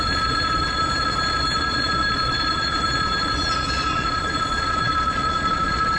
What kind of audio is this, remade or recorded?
remade